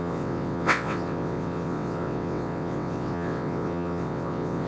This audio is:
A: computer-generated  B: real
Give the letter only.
A